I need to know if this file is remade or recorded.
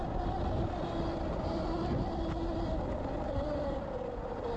recorded